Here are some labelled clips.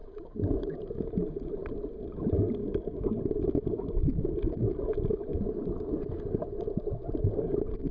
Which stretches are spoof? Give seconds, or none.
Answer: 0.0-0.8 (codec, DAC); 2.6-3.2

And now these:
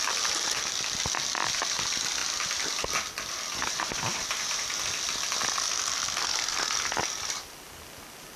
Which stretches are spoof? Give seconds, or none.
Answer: none

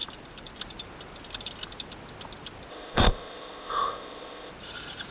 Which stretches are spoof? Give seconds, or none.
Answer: 2.7-4.5 (codec, ZipCodec)

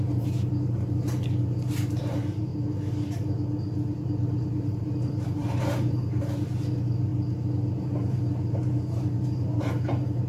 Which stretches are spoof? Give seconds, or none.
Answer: 0.0-2.5 (vocoder, BigVGAN v2); 4.0-7.1; 7.8-10.3

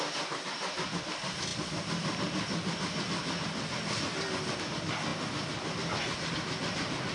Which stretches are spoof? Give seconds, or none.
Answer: none

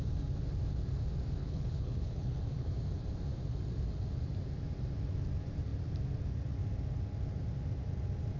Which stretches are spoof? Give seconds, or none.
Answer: 1.4-2.7 (codec, HILCodec)